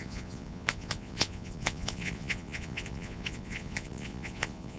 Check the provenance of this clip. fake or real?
fake